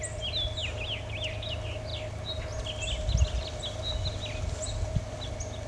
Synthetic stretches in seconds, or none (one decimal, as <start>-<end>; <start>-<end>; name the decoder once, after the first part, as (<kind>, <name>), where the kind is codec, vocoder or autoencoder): none